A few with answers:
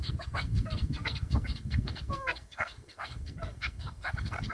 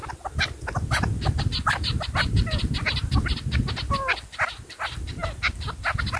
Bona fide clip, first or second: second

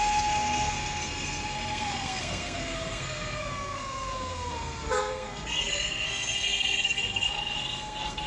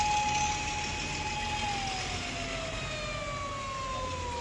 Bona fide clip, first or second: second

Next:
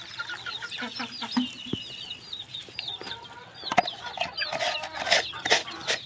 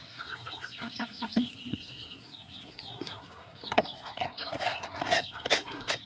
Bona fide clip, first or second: first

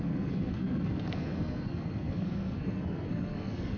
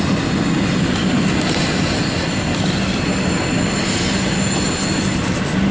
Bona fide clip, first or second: second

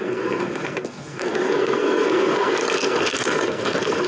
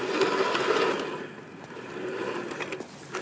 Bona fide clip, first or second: second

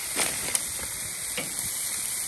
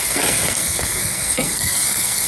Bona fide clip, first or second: first